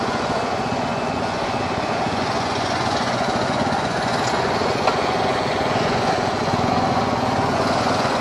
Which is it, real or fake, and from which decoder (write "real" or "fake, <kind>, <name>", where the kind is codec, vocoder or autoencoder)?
fake, vocoder, Vocos